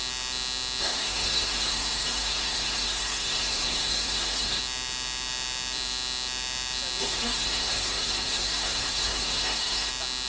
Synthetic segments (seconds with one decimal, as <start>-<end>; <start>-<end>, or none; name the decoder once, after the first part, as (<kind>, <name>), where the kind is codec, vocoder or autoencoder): 0.8-4.6 (codec, SNAC); 7.0-9.9